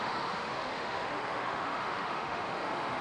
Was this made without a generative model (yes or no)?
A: no